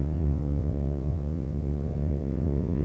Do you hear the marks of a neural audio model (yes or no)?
yes